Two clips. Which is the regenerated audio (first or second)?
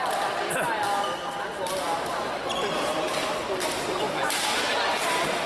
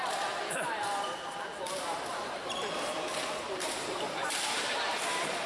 second